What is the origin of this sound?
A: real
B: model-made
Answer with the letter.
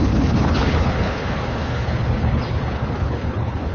B